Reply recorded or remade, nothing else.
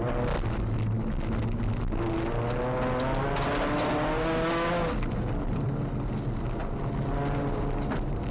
recorded